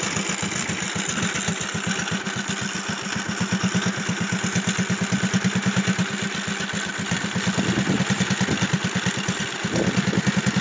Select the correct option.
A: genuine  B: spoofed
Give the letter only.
A